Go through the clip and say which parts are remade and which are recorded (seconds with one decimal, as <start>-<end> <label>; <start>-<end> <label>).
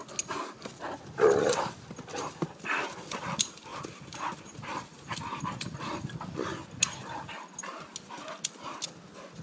0.0-3.7 recorded; 3.7-5.8 remade; 5.8-9.4 recorded